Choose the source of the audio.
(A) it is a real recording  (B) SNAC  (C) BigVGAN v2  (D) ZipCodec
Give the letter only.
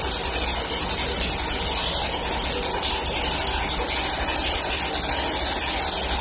A